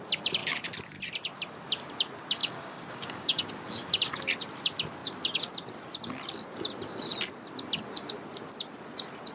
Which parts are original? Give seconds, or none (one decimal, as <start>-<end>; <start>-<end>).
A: 0.0-2.4; 3.4-9.3